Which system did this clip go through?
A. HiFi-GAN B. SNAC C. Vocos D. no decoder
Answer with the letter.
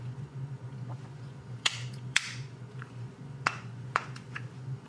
C